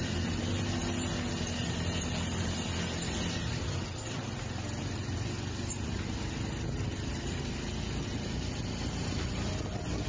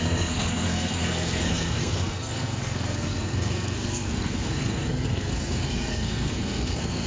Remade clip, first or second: second